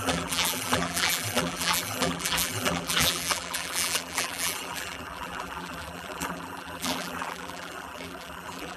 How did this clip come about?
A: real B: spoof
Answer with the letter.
B